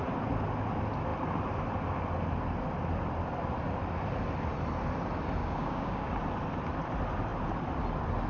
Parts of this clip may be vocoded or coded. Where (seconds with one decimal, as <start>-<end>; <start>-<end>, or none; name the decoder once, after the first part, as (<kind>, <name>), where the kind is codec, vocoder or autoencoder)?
5.4-6.1 (codec, DAC)